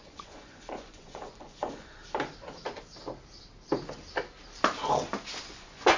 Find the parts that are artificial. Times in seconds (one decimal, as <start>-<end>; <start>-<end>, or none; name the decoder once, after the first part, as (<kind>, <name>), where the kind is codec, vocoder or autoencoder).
0.0-2.0 (vocoder, Vocos); 5.4-6.0